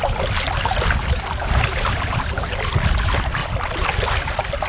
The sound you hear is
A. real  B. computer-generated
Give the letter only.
A